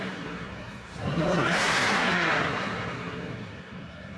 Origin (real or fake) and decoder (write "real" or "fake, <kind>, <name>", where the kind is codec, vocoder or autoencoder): fake, codec, SNAC